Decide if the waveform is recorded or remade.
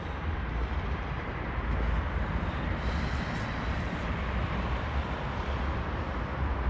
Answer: remade